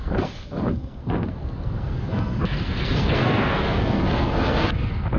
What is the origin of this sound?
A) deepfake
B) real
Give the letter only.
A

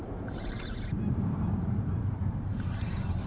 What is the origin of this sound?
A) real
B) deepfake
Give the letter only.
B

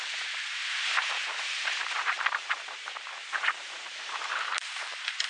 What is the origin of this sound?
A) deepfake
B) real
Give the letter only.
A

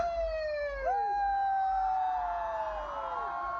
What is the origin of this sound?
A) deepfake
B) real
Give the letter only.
B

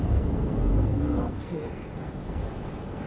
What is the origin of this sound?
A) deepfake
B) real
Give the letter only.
A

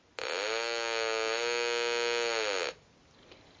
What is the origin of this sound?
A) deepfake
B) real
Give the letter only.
B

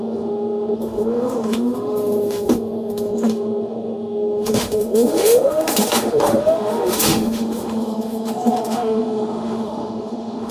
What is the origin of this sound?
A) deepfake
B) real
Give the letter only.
A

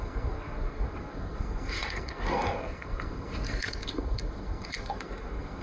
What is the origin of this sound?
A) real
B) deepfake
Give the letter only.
B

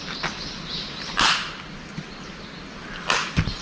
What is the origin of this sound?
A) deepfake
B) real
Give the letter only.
B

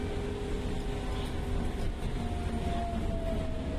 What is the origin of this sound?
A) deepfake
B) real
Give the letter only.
B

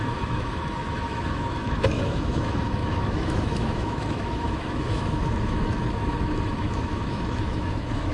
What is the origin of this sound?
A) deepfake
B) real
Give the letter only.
A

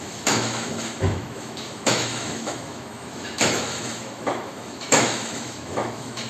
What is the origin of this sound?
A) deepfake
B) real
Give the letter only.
A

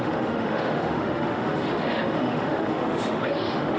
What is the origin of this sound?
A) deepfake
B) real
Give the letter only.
A